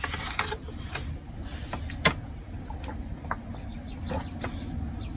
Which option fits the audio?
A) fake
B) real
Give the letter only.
B